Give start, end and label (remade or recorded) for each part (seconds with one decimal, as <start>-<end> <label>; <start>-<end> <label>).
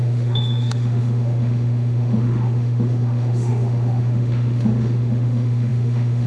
0.0-6.3 remade